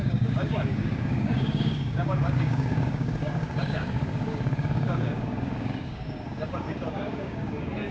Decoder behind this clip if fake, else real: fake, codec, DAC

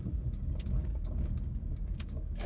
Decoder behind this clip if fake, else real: fake, codec, DAC